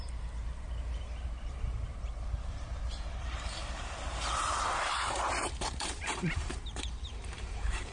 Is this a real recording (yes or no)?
no